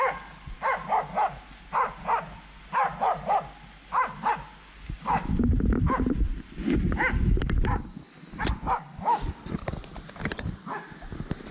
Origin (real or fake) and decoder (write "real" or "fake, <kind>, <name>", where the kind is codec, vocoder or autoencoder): real